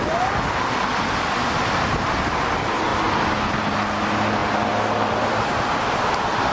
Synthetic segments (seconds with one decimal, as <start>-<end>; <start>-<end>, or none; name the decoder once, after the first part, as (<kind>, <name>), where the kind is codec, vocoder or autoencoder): none